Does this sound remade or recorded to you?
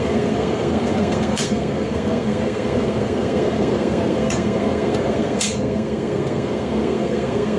remade